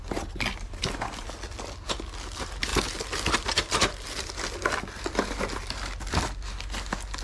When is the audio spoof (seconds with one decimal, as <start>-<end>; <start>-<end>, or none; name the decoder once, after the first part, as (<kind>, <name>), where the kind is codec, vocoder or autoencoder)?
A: none